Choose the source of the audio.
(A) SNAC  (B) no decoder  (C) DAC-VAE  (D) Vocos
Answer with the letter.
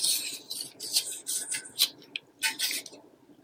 B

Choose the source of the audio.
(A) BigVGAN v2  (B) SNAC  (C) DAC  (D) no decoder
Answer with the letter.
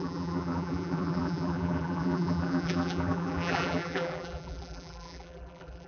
A